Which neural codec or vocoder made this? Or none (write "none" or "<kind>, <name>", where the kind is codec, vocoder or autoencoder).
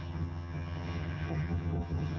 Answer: vocoder, HiFi-GAN